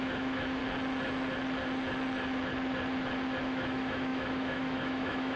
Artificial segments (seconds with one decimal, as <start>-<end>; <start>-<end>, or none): 0.0-0.6; 3.4-5.4

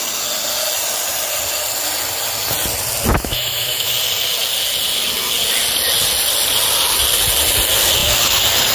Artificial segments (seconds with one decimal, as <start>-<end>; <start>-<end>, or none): 3.1-3.9

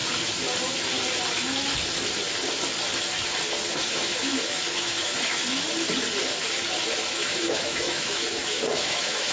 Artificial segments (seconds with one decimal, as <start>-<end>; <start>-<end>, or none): 3.7-5.4; 7.1-9.3

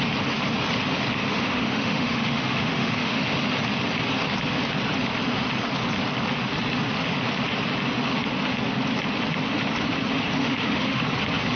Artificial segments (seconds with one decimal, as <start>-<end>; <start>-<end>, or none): 1.2-3.2; 10.4-11.0

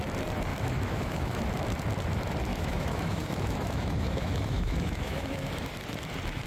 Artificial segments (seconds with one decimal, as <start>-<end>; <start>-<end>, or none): 0.5-1.4; 2.5-5.5